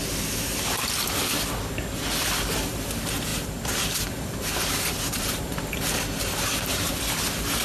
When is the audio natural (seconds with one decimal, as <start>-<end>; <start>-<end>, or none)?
0.0-3.3; 6.9-7.6

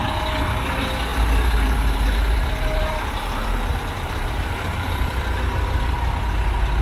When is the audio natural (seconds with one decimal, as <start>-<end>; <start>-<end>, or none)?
0.0-1.1; 5.2-6.8

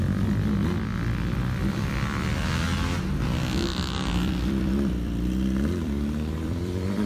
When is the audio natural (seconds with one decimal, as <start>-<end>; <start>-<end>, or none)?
0.0-1.3; 2.5-3.7